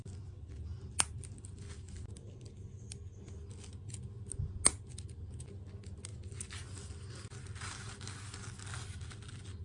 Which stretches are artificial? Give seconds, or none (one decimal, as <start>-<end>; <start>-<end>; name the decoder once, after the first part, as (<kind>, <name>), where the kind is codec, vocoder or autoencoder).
none